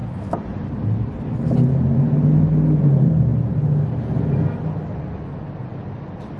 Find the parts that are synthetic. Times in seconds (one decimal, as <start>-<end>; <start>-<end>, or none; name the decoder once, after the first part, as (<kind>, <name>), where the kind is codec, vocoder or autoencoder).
none